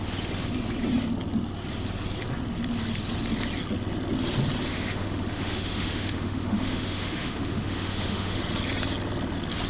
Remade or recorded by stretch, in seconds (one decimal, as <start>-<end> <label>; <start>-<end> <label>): 0.0-4.7 recorded; 4.7-8.4 remade; 8.4-9.7 recorded